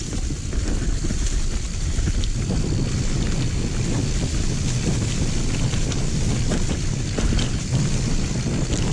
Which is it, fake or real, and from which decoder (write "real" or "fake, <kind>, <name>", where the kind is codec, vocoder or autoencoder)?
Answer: real